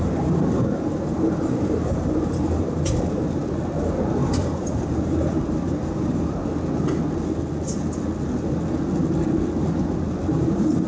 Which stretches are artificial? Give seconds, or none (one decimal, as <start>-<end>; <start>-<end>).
0.0-3.4; 4.2-6.4; 10.2-10.9